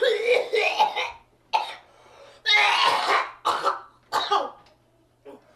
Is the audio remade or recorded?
recorded